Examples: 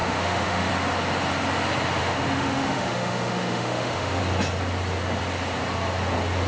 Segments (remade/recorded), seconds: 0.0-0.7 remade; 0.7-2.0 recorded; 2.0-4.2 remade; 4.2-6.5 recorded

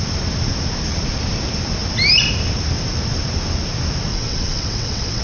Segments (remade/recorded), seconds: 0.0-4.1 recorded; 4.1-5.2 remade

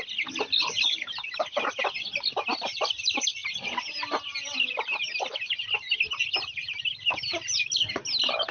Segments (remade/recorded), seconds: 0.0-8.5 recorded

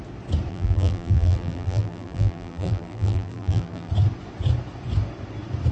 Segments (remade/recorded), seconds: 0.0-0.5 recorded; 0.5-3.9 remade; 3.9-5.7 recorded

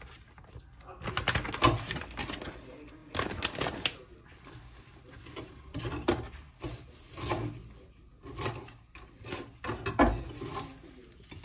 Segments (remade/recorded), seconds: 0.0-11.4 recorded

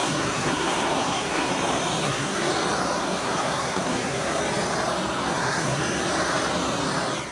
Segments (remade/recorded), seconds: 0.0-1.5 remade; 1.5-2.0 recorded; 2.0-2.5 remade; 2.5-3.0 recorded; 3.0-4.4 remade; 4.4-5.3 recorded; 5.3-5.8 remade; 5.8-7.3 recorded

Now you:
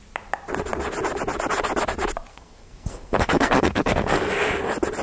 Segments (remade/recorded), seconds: 0.0-2.3 recorded; 2.3-4.3 remade; 4.3-5.0 recorded